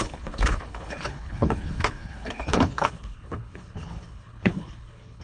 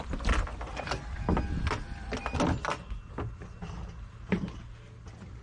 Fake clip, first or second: first